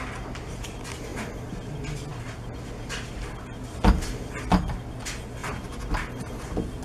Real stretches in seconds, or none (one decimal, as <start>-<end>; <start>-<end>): 0.0-5.4; 6.3-6.8